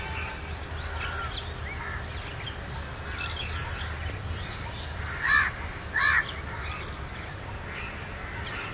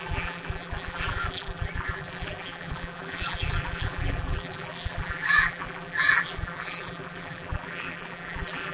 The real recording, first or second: first